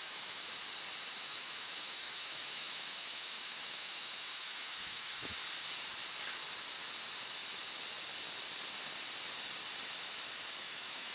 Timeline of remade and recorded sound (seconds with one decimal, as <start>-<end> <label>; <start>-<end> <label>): 0.0-0.5 remade; 0.5-1.0 recorded; 1.0-5.4 remade; 5.4-10.6 recorded; 10.6-11.1 remade

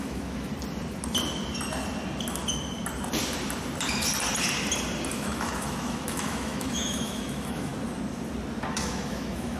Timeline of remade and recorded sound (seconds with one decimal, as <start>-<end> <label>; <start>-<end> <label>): 0.0-0.5 remade; 0.5-5.1 recorded; 5.1-7.7 remade; 7.7-8.7 recorded; 8.7-9.6 remade

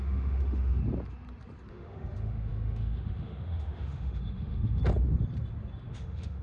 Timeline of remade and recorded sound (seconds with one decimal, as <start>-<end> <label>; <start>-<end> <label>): 0.0-0.8 remade; 0.8-1.7 recorded; 1.7-4.8 remade; 4.8-5.9 recorded; 5.9-6.4 remade